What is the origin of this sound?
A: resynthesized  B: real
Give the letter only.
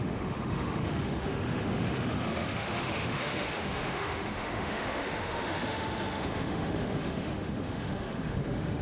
A